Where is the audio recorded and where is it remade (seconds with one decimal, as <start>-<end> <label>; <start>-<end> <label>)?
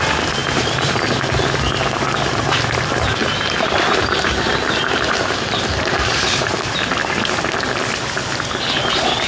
0.0-0.4 recorded; 0.4-1.0 remade; 1.0-3.2 recorded; 3.2-6.5 remade; 6.5-9.3 recorded